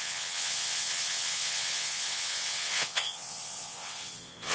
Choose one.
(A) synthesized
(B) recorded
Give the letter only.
A